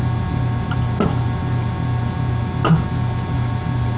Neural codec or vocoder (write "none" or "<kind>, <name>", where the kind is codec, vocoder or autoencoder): none